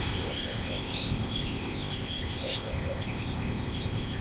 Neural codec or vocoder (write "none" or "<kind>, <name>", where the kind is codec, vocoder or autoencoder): codec, ZipCodec